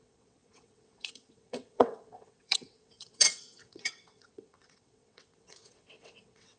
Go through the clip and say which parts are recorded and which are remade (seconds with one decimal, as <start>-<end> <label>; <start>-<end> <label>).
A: 0.0-6.6 remade